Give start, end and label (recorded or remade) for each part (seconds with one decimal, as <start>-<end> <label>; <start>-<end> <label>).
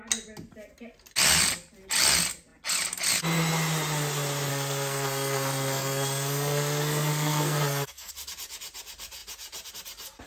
0.0-4.5 recorded; 4.5-8.1 remade; 8.1-10.3 recorded